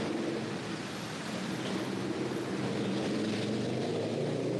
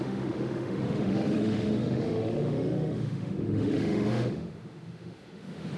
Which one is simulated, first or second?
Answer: second